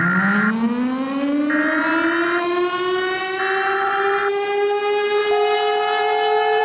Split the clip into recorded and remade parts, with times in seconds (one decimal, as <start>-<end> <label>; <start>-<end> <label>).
0.0-6.6 recorded